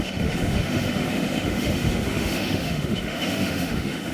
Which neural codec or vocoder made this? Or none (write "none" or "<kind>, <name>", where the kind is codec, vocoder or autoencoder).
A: autoencoder, DAC-VAE